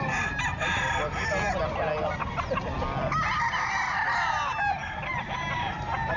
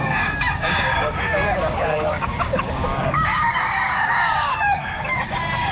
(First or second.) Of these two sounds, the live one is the first